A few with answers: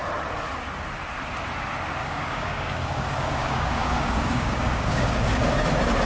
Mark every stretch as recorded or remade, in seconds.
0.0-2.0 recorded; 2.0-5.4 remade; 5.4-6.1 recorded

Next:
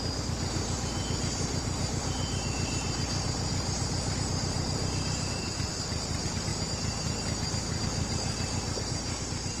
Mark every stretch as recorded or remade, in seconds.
0.0-6.5 remade; 6.5-7.8 recorded; 7.8-9.6 remade

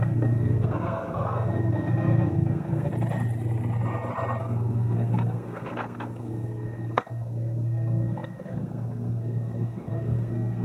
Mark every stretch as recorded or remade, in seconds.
0.0-2.9 remade; 2.9-4.4 recorded; 4.4-10.6 remade

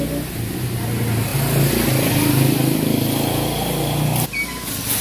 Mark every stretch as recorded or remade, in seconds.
0.0-5.0 recorded

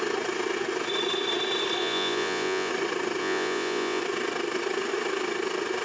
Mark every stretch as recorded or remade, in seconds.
0.0-1.8 recorded; 1.8-2.7 remade; 2.7-3.2 recorded; 3.2-4.0 remade; 4.0-5.8 recorded

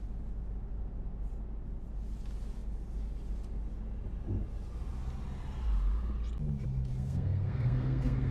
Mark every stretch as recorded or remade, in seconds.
0.0-6.9 recorded; 6.9-8.3 remade

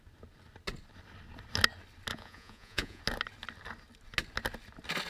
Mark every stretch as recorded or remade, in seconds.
0.0-2.1 recorded; 2.1-3.0 remade; 3.0-5.1 recorded

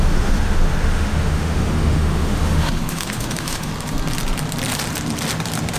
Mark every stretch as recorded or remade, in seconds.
0.0-3.7 remade; 3.7-5.8 recorded